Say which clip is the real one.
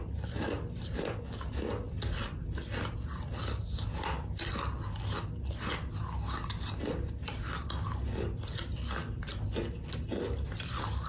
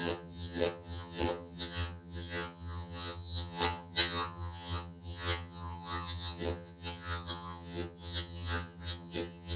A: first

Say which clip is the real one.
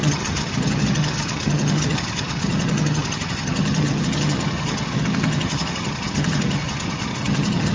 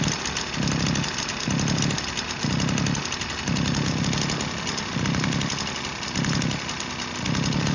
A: second